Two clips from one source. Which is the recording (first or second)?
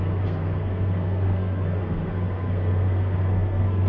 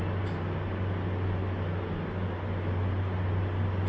second